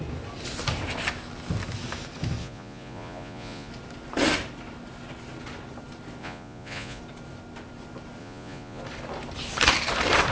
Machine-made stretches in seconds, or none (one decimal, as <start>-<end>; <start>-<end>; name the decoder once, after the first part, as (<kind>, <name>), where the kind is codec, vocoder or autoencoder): 2.4-3.7 (vocoder, Vocos); 6.2-7.0; 8.2-8.8